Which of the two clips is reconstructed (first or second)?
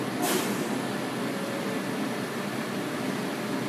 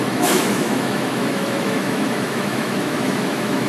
second